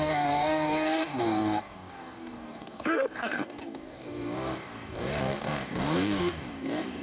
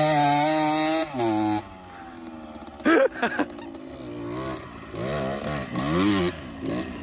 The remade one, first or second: first